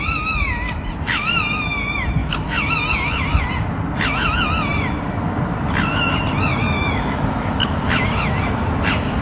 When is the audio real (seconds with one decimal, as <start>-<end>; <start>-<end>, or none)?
0.0-2.2; 2.7-6.5; 7.9-9.2